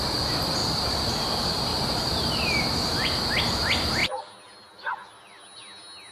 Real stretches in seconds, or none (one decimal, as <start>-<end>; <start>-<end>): 0.0-0.6; 1.1-1.7; 3.3-6.1